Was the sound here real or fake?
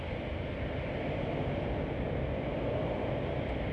real